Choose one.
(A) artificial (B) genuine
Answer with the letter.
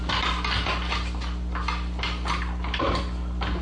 B